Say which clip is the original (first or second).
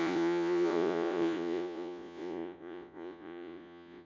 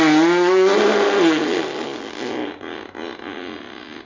second